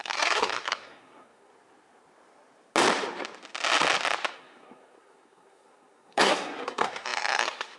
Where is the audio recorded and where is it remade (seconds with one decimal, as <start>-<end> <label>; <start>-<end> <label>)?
0.0-1.5 remade; 1.5-4.3 recorded; 4.3-7.8 remade